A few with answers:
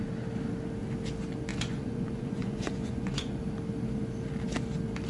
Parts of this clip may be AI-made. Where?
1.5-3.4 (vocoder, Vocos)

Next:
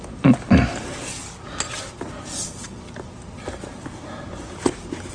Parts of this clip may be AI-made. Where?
none

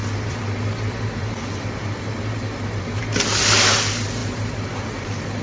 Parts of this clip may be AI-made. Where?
0.0-3.0 (vocoder, BigVGAN v2); 4.2-5.4

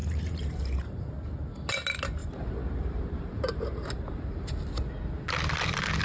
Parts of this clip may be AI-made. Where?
0.0-1.1 (vocoder, BigVGAN v2); 2.2-4.5

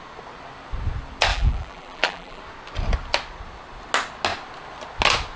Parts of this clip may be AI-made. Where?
1.3-2.4 (vocoder, BigVGAN v2)

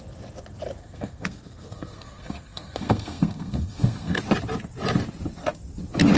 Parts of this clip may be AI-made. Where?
0.8-4.2 (codec, SNAC)